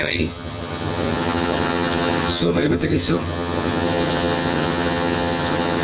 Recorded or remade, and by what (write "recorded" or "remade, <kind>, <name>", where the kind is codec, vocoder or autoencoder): remade, vocoder, HiFi-GAN